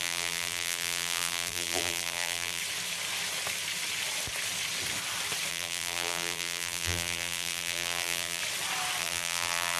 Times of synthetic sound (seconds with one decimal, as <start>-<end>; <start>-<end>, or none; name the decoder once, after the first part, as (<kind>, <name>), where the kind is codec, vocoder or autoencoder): 0.0-2.6 (vocoder, BigVGAN v2); 5.5-8.4; 9.0-9.8